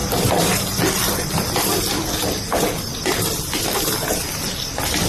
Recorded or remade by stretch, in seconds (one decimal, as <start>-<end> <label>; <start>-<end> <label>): 0.0-5.1 recorded